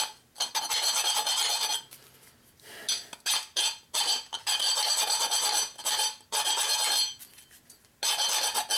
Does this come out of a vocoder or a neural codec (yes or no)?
no